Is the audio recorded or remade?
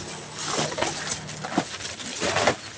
recorded